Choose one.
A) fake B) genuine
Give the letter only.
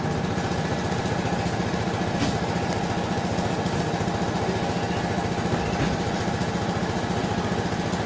B